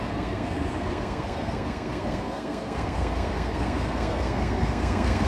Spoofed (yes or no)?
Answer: yes